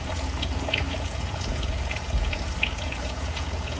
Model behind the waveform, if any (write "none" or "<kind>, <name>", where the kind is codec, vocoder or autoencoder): vocoder, Vocos